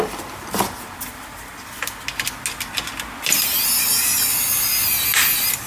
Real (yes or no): yes